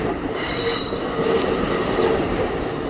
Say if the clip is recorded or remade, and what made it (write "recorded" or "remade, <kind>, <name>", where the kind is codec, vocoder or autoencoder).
recorded